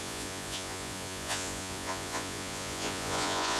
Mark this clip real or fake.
fake